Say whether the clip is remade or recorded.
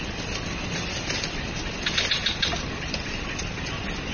recorded